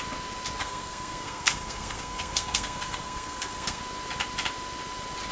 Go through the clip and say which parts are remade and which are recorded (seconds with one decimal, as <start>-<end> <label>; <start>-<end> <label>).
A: 0.0-0.6 recorded; 0.6-3.8 remade; 3.8-5.3 recorded